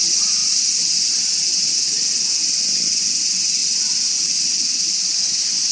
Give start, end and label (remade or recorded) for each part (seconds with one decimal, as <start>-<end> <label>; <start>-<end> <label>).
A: 0.0-5.7 recorded